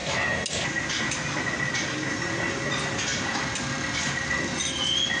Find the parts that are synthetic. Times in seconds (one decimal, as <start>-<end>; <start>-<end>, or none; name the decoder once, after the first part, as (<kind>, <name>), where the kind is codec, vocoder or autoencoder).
none